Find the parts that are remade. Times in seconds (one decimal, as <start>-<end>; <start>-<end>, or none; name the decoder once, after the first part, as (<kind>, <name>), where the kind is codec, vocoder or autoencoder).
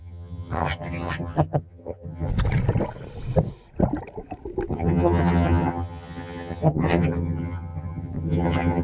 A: 0.0-2.3 (vocoder, HiFi-GAN); 4.7-8.8